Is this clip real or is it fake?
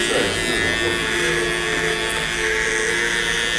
real